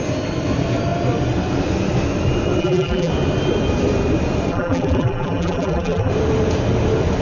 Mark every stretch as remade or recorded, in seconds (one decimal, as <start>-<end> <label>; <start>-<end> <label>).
0.0-2.6 recorded; 2.6-3.1 remade; 3.1-4.5 recorded; 4.5-6.1 remade; 6.1-7.2 recorded